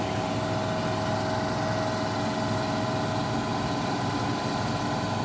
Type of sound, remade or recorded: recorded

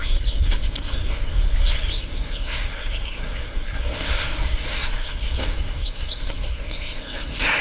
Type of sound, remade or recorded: remade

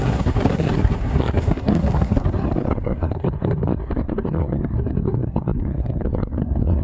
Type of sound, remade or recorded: remade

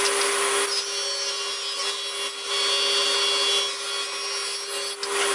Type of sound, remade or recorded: recorded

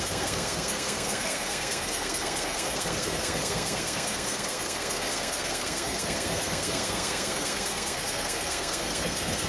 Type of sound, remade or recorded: remade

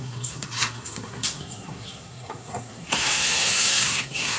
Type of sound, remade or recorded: remade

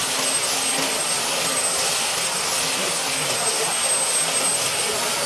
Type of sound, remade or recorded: recorded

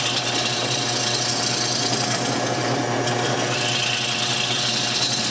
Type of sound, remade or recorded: recorded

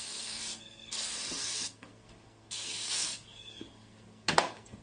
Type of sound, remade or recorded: remade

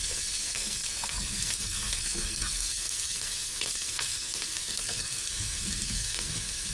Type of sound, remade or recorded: remade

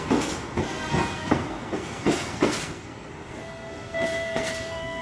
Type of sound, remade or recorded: remade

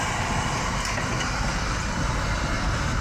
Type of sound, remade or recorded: recorded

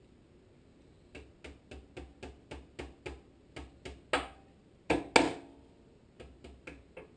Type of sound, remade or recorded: recorded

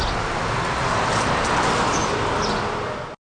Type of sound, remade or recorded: recorded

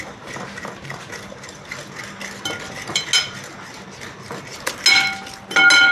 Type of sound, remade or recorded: recorded